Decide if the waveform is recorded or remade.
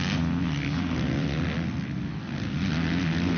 recorded